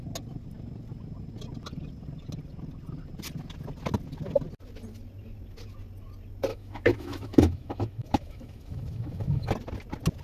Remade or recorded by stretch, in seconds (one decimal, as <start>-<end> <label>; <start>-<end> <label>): 0.0-6.5 recorded; 6.5-9.5 remade; 9.5-10.2 recorded